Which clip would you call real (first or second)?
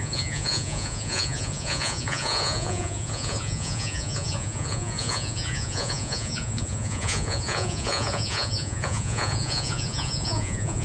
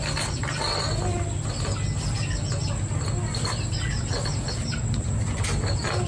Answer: second